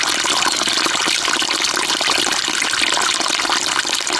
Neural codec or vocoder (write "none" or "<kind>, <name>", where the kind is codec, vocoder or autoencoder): vocoder, BigVGAN v2